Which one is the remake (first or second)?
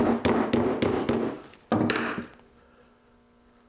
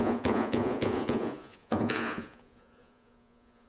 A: second